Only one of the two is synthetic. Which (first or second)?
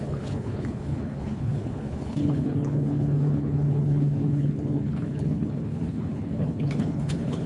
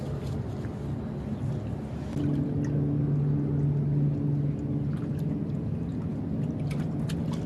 first